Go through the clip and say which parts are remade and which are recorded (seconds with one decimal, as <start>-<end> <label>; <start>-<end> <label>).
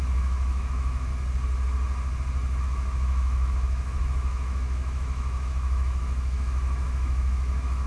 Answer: 0.0-1.1 remade; 1.1-2.6 recorded; 2.6-7.9 remade